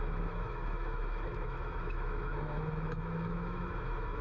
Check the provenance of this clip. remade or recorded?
remade